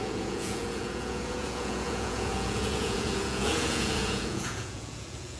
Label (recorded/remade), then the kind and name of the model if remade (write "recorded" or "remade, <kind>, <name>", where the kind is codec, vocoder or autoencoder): remade, vocoder, Vocos